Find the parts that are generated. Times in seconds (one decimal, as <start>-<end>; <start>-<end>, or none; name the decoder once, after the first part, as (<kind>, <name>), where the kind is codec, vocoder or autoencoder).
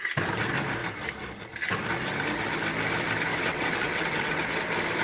3.3-4.4 (vocoder, WaveNeXt)